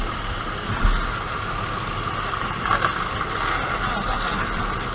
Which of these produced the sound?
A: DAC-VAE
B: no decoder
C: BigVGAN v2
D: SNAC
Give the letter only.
B